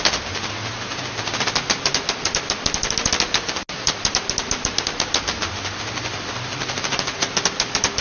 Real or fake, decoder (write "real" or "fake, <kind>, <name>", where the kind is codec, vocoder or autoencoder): real